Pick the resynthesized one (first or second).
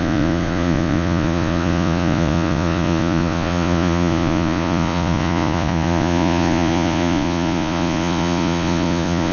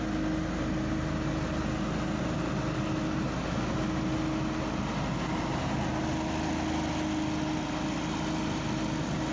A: first